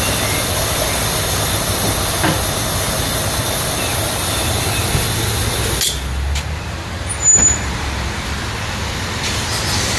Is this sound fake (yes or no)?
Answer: no